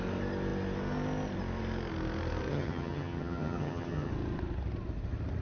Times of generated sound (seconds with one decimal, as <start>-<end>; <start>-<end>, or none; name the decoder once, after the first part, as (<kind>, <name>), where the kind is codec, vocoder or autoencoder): 2.5-4.1 (vocoder, HiFi-GAN)